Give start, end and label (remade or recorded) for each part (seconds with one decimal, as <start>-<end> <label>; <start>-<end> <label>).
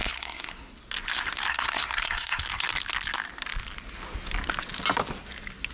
0.0-0.7 remade; 0.7-1.5 recorded; 1.5-2.4 remade; 2.4-5.7 recorded